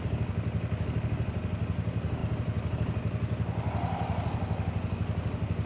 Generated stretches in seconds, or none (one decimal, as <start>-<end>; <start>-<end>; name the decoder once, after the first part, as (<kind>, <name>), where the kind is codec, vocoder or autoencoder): none